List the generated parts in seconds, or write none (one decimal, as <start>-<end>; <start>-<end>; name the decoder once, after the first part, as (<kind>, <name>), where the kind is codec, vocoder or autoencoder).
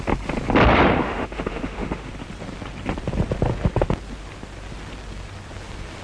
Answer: 1.0-2.1 (autoencoder, DAC-VAE)